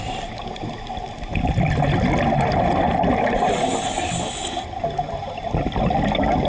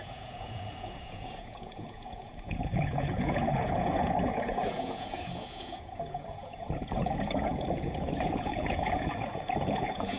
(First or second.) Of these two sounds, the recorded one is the first